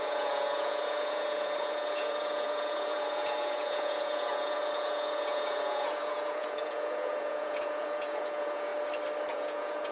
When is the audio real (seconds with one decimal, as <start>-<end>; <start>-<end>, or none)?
8.7-9.3